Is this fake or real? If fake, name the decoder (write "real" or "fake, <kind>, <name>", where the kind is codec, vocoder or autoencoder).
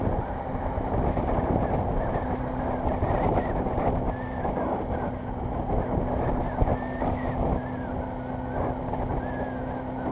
real